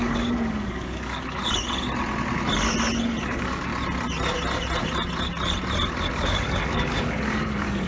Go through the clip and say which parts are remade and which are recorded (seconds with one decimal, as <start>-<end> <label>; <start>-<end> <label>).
0.0-1.4 remade; 1.4-3.2 recorded; 3.2-3.7 remade; 3.7-6.1 recorded; 6.1-7.9 remade